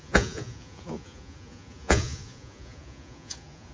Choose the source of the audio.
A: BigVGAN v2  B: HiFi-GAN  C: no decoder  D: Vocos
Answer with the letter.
D